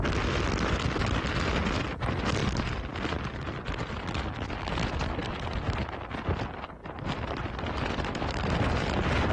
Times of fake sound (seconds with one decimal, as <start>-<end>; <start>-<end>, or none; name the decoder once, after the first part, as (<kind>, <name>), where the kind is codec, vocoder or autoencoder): 5.2-5.8 (vocoder, BigVGAN v2); 6.8-8.9